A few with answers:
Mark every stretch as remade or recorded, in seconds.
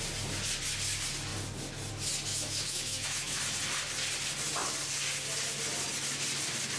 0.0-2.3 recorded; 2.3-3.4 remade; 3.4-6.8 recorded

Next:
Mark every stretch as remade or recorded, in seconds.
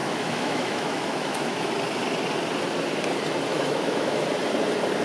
0.0-1.7 remade; 1.7-3.5 recorded; 3.5-4.2 remade; 4.2-5.0 recorded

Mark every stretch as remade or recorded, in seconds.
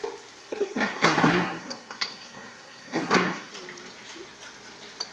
0.0-0.4 recorded; 0.4-3.5 remade; 3.5-5.1 recorded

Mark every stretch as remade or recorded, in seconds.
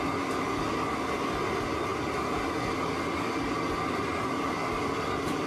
0.0-5.5 recorded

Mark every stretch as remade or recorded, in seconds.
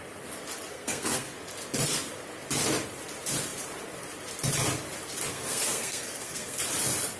0.0-0.7 recorded; 0.7-1.3 remade; 1.3-5.3 recorded; 5.3-6.6 remade; 6.6-7.2 recorded